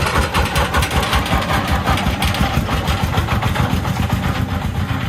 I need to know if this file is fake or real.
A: real